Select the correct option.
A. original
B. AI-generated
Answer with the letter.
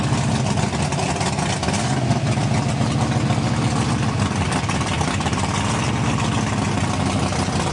A